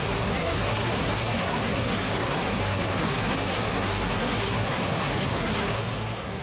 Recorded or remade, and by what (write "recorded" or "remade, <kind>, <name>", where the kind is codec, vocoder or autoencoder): remade, codec, SNAC